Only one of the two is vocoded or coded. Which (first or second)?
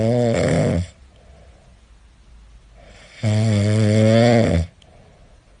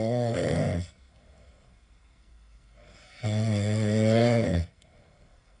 second